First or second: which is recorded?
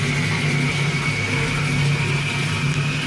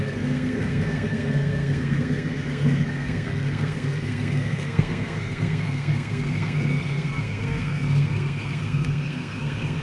first